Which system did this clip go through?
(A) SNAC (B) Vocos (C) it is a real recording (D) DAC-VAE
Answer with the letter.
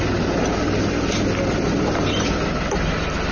C